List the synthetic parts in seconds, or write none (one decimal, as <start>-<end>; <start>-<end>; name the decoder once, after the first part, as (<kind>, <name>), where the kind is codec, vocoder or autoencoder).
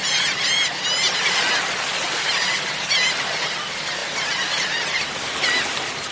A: none